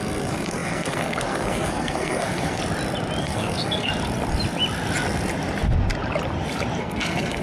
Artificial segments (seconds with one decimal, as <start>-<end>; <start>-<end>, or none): 0.0-2.6; 3.2-3.9; 6.8-7.4